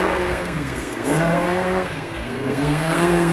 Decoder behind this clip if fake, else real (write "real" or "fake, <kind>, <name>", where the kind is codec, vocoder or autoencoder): fake, codec, SNAC